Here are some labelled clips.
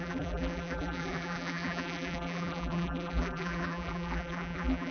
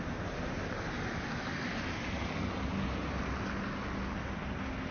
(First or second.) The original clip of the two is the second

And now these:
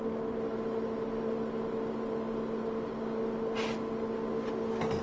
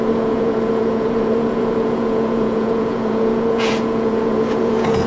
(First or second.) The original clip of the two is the first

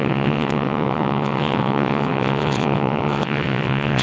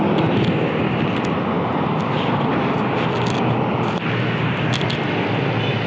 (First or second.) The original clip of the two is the second